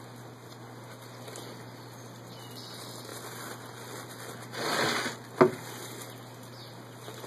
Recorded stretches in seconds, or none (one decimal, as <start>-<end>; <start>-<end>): 0.0-7.3